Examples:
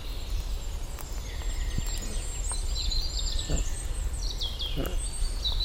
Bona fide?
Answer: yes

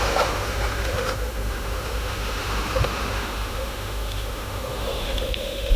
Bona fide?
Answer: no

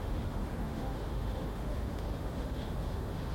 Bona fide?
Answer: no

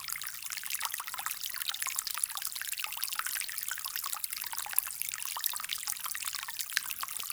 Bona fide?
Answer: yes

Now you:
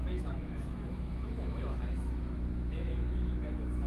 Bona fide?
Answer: no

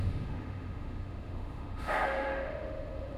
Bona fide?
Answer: no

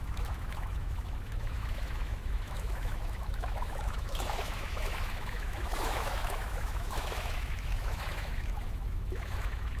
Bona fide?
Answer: no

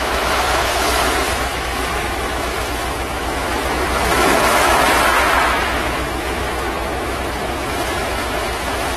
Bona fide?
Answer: no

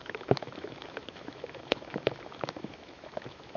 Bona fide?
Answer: no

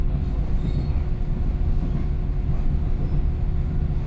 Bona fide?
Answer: yes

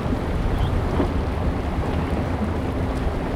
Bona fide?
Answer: yes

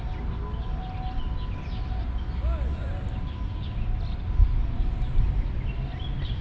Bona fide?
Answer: yes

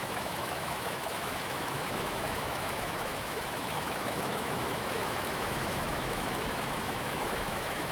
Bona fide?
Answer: no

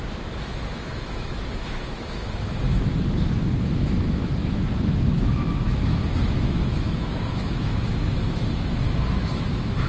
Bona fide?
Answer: no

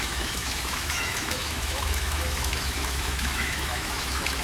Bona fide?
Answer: no